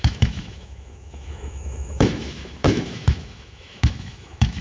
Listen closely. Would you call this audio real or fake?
fake